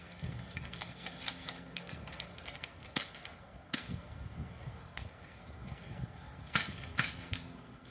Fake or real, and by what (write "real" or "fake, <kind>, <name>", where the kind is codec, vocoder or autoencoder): fake, codec, SNAC